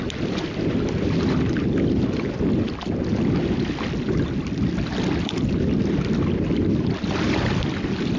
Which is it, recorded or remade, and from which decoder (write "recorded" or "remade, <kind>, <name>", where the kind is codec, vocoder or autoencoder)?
recorded